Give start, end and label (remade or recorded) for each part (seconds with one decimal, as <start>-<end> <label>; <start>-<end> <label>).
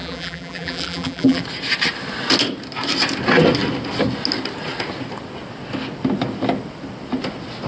0.0-1.4 remade; 1.4-7.7 recorded